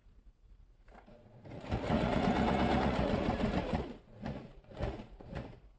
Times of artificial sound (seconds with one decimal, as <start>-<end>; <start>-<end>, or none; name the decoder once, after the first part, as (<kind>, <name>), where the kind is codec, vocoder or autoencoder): 0.0-5.8 (vocoder, Vocos)

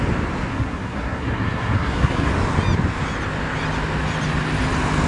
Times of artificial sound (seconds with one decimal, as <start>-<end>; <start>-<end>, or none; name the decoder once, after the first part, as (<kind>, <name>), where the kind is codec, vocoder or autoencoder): 0.5-2.3 (codec, SNAC)

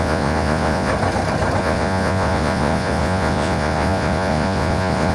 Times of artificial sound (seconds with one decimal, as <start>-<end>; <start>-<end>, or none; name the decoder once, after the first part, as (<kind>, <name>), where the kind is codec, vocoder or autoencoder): 0.0-0.9 (vocoder, Vocos); 1.6-5.1